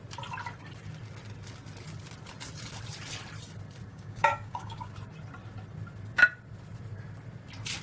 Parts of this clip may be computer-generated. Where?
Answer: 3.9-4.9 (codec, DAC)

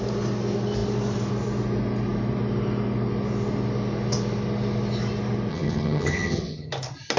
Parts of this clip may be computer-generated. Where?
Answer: 5.5-6.7 (vocoder, HiFi-GAN)

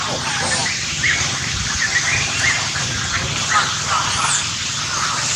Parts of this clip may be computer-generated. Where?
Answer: 0.6-3.1 (vocoder, BigVGAN v2)

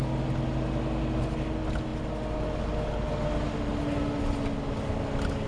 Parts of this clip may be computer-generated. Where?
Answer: none

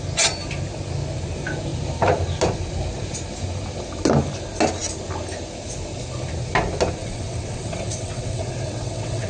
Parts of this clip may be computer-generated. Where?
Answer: 7.0-9.3 (vocoder, WaveNeXt)

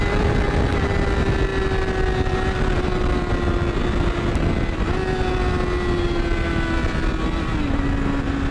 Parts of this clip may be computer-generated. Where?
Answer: none

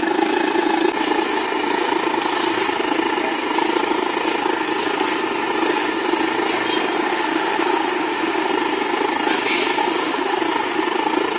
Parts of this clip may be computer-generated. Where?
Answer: 7.1-8.5 (autoencoder, DAC-VAE); 9.8-10.4

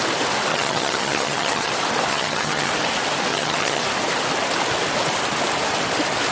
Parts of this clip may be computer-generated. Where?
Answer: 0.5-1.7 (vocoder, HiFi-GAN); 2.1-2.7; 3.3-3.8